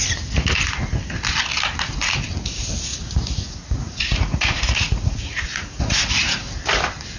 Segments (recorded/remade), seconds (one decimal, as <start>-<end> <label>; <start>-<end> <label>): 0.0-2.9 recorded; 2.9-6.4 remade; 6.4-7.2 recorded